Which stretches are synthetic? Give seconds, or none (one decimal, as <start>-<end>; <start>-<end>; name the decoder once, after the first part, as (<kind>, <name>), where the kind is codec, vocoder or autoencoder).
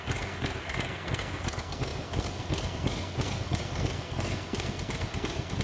0.0-5.6 (codec, SNAC)